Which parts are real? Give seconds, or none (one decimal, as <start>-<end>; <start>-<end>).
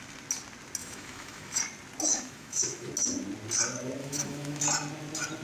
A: 0.0-0.8; 1.6-2.1; 2.9-4.0; 4.6-5.4